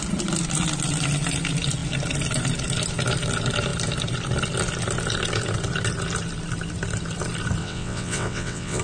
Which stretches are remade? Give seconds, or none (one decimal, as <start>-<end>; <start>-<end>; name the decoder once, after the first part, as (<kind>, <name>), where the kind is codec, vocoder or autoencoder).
7.6-8.8 (vocoder, WaveNeXt)